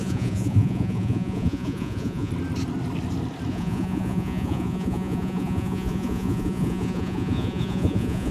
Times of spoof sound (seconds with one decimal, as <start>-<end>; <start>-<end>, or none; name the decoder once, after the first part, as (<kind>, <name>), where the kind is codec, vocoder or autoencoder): 0.0-2.3 (vocoder, Vocos); 3.5-8.3